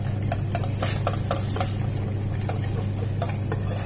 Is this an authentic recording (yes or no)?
yes